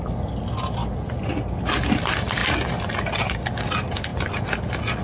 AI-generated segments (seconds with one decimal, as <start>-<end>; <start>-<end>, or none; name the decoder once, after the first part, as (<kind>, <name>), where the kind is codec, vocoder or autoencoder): none